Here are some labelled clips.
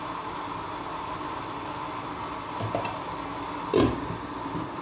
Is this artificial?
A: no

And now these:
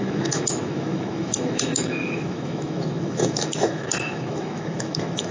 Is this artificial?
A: yes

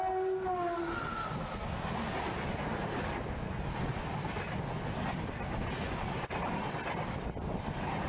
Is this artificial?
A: no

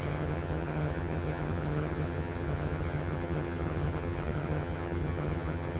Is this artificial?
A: yes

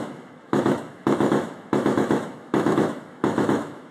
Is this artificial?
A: yes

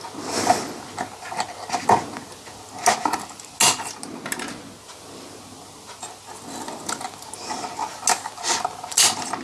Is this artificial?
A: no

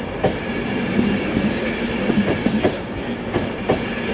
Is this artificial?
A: no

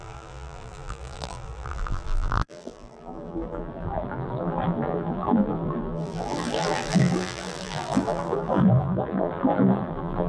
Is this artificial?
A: yes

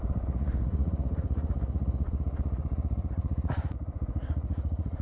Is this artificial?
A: yes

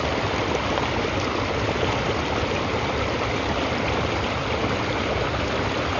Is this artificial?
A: no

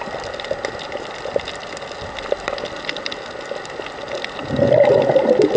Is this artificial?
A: no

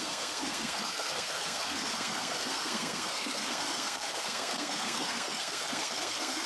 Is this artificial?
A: yes